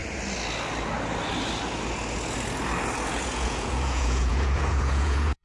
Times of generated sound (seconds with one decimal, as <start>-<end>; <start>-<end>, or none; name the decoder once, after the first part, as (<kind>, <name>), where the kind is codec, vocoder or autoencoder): 3.2-5.4 (vocoder, Vocos)